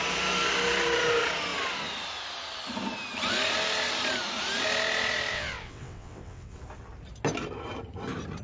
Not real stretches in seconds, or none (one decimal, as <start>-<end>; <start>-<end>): 5.3-6.5